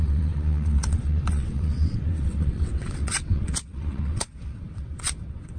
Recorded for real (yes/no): no